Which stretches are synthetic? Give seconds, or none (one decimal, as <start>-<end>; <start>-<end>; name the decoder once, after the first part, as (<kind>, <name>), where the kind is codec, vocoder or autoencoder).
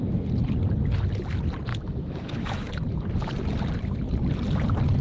1.7-2.7 (autoencoder, DAC-VAE)